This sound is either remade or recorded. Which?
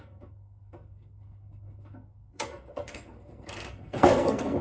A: remade